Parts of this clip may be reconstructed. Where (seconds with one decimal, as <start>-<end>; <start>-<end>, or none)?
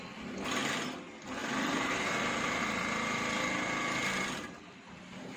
none